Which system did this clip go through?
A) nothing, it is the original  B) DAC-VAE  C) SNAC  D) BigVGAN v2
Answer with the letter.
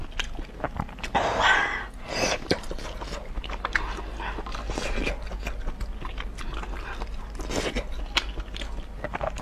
A